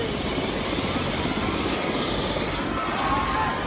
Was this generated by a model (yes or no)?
no